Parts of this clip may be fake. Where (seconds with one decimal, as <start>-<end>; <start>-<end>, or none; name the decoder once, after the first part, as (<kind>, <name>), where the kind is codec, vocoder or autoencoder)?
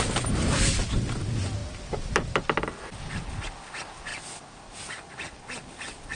none